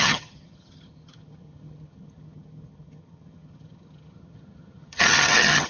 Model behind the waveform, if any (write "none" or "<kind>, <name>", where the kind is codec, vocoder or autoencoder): vocoder, HiFi-GAN